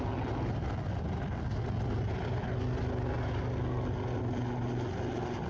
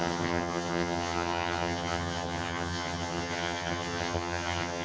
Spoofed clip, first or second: second